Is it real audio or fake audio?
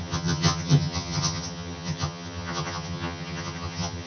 fake